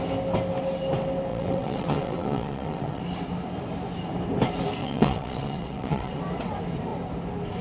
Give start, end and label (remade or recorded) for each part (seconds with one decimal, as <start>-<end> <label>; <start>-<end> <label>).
0.0-1.3 recorded; 1.3-3.0 remade; 3.0-4.8 recorded; 4.8-6.2 remade; 6.2-7.6 recorded